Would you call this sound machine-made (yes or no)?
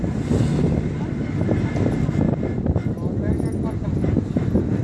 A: no